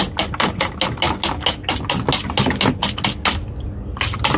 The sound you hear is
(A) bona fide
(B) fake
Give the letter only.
A